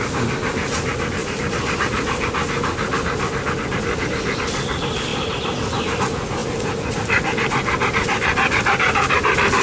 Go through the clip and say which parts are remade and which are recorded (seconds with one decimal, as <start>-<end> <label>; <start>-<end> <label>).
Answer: 0.0-1.2 recorded; 1.2-2.3 remade; 2.3-6.4 recorded; 6.4-7.4 remade; 7.4-9.6 recorded